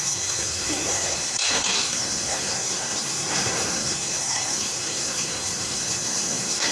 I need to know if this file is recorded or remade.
remade